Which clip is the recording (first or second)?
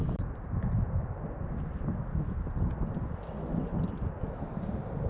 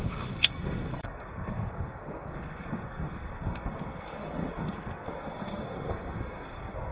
first